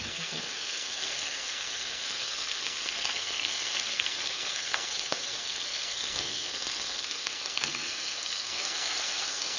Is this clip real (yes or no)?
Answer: no